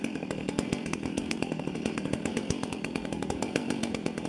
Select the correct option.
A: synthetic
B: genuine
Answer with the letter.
A